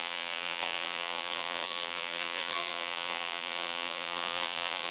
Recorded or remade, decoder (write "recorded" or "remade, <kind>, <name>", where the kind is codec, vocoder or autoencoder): remade, vocoder, BigVGAN v2